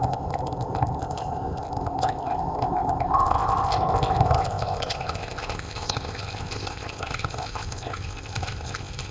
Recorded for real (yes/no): no